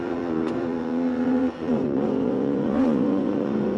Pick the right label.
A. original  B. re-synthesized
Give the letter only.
B